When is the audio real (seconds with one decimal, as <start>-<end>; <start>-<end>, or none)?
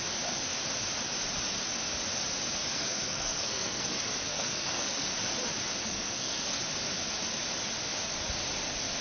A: 0.0-2.6; 5.1-5.8; 6.6-9.0